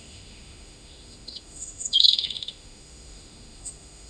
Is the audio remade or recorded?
remade